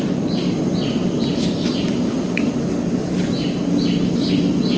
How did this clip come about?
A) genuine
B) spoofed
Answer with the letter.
A